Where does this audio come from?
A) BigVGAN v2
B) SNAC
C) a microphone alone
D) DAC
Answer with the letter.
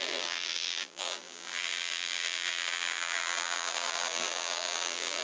A